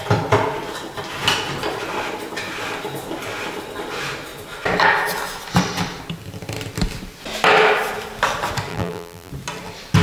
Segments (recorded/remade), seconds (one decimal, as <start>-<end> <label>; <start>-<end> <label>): 0.0-8.7 recorded; 8.7-9.3 remade; 9.3-10.0 recorded